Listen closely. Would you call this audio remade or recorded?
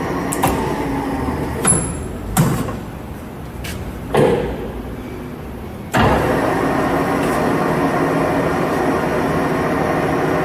recorded